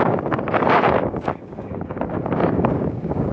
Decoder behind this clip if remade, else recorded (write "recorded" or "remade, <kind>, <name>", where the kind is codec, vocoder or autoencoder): remade, codec, DAC